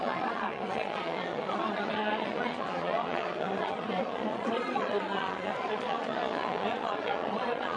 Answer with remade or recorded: remade